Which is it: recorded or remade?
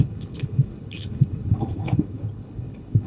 remade